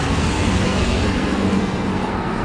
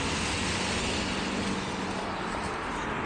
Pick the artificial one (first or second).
first